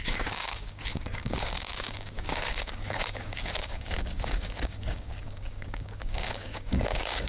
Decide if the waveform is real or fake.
fake